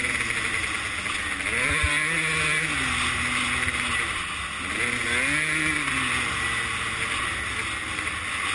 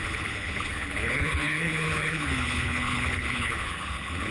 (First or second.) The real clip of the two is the first